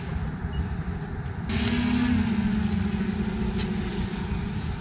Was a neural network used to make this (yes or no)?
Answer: no